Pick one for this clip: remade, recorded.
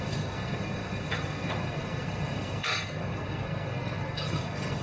remade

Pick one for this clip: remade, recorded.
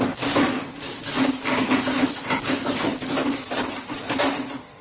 recorded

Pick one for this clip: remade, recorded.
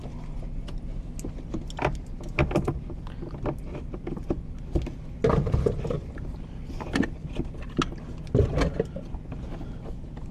recorded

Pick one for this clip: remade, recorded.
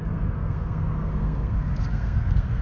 remade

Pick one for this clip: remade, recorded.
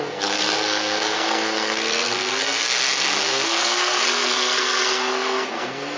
remade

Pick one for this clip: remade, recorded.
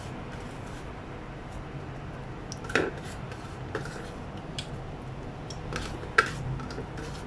recorded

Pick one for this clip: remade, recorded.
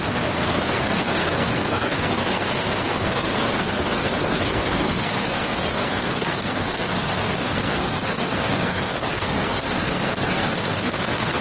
remade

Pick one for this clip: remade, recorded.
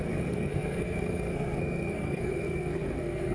remade